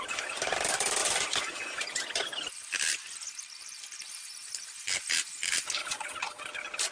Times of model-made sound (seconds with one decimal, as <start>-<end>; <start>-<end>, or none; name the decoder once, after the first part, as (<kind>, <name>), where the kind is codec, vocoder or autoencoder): 5.8-6.5 (vocoder, Vocos)